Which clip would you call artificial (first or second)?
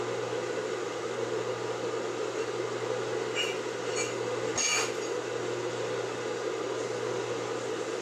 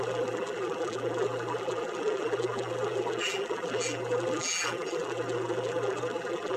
second